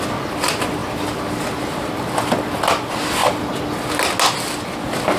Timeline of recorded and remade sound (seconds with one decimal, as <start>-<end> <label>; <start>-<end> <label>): 0.0-5.2 recorded

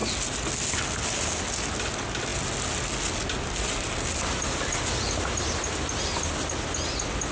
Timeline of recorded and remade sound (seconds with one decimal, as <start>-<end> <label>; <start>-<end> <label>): 0.0-7.3 recorded

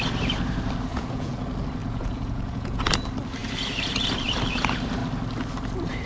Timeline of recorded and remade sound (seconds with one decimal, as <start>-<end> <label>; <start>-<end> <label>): 0.0-0.9 recorded; 0.9-1.4 remade; 1.4-1.8 recorded; 1.8-2.8 remade; 2.8-6.1 recorded

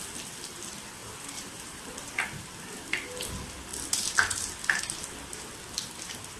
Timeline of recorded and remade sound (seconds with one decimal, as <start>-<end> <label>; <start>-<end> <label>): 0.0-1.0 recorded; 1.0-1.8 remade; 1.8-6.4 recorded

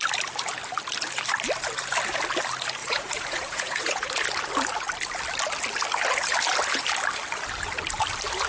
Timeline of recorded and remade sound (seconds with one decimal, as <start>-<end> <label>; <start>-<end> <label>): 0.0-2.8 recorded; 2.8-4.1 remade; 4.1-8.5 recorded

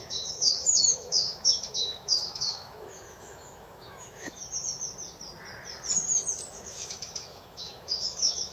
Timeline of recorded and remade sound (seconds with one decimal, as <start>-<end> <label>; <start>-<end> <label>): 0.0-4.4 remade; 4.4-6.5 recorded; 6.5-8.5 remade

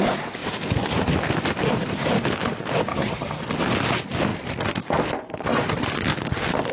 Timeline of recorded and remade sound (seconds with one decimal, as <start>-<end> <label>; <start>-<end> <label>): 0.0-2.9 recorded; 2.9-3.4 remade; 3.4-6.7 recorded